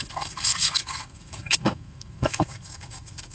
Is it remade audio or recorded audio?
remade